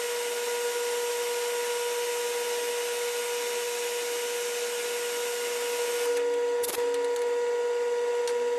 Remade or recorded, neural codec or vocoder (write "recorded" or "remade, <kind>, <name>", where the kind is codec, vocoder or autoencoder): recorded